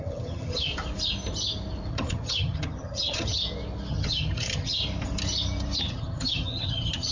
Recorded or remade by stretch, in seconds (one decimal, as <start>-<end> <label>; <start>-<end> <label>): 0.0-0.7 remade; 0.7-1.9 recorded; 1.9-3.4 remade; 3.4-3.9 recorded; 3.9-4.8 remade; 4.8-5.8 recorded; 5.8-7.1 remade